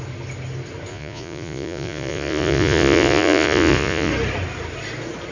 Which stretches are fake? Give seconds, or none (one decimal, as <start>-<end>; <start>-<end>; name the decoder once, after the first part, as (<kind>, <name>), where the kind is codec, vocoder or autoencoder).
0.9-4.1 (vocoder, Vocos)